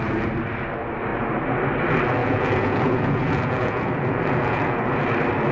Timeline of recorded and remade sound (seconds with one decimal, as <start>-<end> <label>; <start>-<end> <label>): 0.0-2.2 recorded; 2.2-5.0 remade; 5.0-5.5 recorded